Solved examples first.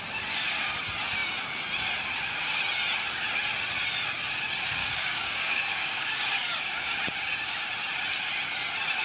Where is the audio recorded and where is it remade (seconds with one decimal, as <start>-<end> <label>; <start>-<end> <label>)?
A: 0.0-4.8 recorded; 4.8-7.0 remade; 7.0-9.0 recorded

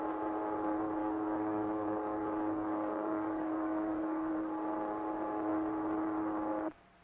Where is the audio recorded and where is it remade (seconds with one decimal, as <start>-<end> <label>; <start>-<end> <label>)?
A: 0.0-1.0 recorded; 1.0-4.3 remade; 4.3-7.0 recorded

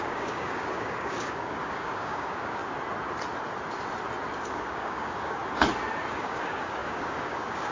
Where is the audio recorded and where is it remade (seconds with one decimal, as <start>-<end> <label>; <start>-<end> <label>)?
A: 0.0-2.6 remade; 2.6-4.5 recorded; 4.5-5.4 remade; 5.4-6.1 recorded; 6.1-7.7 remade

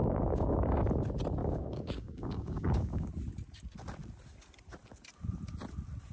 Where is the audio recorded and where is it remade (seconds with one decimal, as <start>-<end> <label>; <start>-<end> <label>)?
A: 0.0-0.8 remade; 0.8-1.4 recorded; 1.4-3.1 remade; 3.1-6.1 recorded

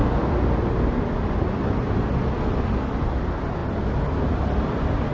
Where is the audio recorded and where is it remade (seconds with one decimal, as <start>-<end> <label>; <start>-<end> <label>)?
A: 0.0-5.1 recorded

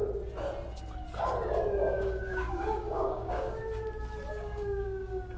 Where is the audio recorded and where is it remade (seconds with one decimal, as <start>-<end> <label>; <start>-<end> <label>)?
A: 0.0-1.8 recorded; 1.8-3.6 remade; 3.6-4.3 recorded; 4.3-5.4 remade

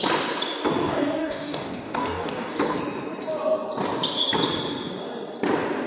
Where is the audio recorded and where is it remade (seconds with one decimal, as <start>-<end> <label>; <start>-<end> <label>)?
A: 0.0-0.8 recorded; 0.8-2.8 remade; 2.8-5.9 recorded